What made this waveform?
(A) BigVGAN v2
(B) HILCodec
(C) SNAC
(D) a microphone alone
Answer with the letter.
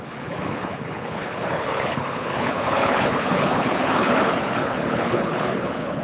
B